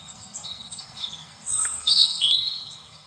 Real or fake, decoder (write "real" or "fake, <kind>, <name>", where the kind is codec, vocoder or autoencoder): fake, codec, SNAC